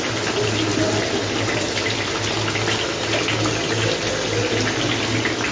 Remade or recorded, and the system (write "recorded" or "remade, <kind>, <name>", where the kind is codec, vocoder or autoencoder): recorded